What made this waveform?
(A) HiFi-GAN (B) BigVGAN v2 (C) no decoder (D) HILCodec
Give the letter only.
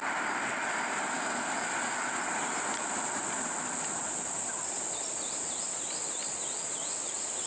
C